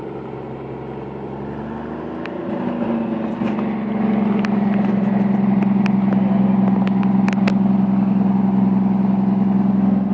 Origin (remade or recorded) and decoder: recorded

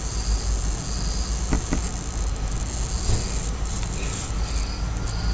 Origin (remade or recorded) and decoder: recorded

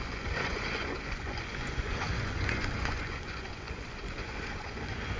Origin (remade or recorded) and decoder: remade, vocoder, Vocos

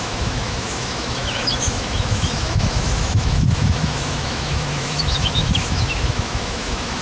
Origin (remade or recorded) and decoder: remade, autoencoder, DAC-VAE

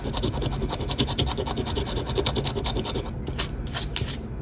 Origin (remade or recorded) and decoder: recorded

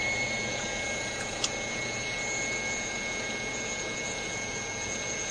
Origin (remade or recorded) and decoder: remade, vocoder, Vocos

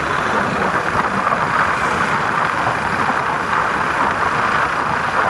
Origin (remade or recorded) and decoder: recorded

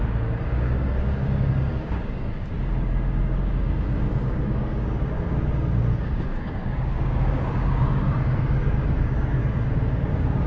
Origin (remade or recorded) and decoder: remade, codec, DAC